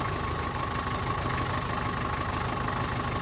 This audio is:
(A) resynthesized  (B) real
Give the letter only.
B